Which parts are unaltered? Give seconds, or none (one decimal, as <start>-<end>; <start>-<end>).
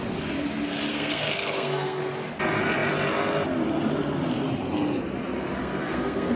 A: 0.0-0.9; 2.0-5.6